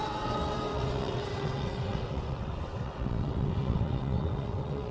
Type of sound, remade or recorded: remade